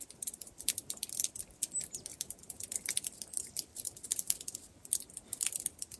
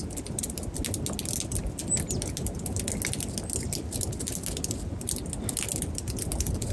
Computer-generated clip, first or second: first